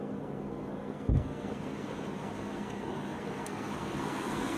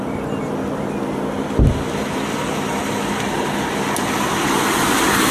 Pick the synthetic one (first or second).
first